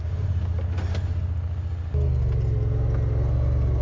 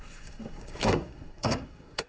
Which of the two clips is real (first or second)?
first